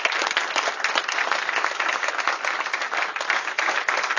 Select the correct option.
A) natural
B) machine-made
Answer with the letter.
A